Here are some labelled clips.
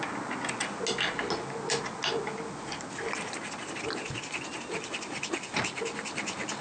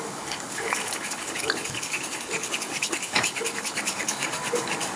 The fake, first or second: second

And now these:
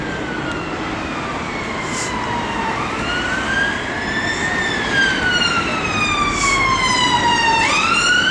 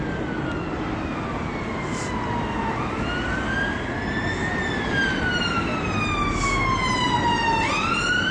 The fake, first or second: first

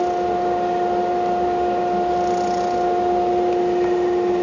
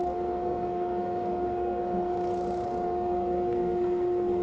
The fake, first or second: second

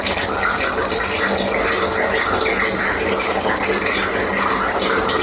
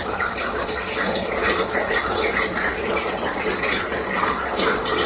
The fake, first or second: second